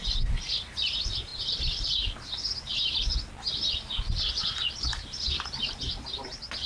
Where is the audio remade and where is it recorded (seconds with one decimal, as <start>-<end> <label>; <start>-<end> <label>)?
0.0-6.7 recorded